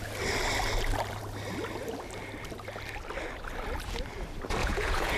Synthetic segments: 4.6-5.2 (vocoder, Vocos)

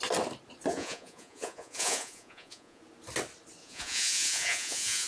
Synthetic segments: 0.7-2.8 (vocoder, Vocos); 3.6-5.1

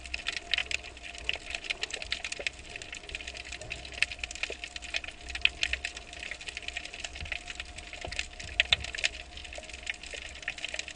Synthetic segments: none

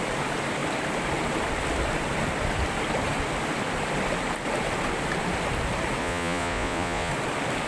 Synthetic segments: 6.0-7.1 (vocoder, Vocos)

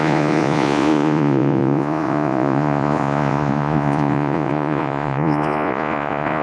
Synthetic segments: 0.0-6.4 (vocoder, Vocos)

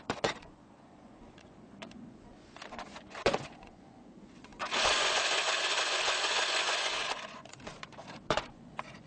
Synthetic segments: 0.0-9.1 (vocoder, Vocos)